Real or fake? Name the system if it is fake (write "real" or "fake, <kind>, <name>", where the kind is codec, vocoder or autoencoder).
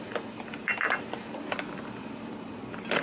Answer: real